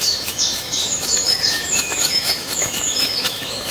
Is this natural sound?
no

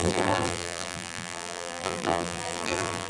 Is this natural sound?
no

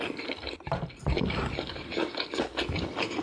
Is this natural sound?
no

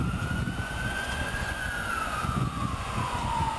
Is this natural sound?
no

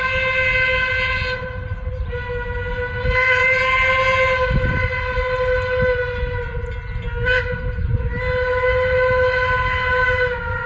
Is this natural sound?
yes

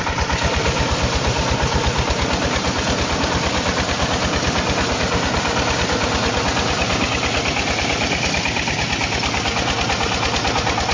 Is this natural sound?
yes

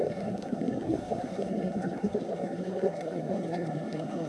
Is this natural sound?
no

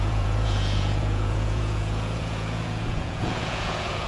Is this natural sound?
no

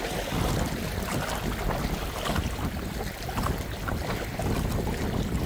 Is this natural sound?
yes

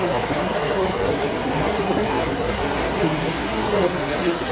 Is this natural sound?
no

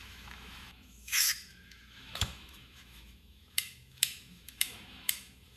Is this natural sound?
no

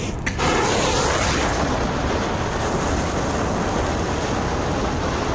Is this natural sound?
yes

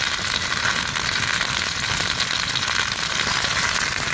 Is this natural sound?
yes